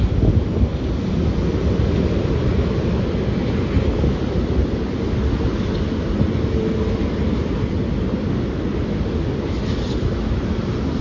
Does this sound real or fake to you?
real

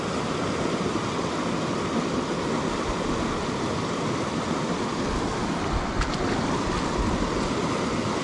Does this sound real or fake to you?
real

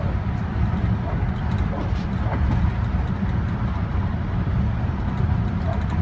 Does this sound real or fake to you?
real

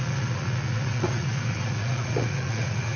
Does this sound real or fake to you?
fake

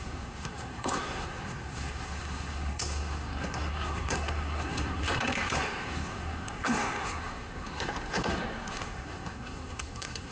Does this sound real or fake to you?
fake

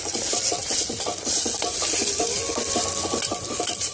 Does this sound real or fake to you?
real